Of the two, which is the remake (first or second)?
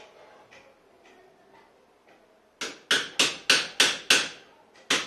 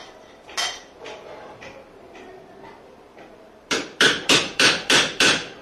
second